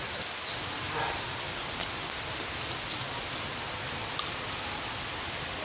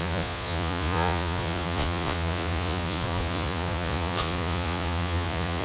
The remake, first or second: second